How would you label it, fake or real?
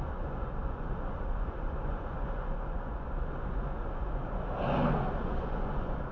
fake